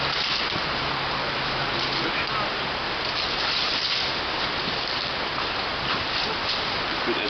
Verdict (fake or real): real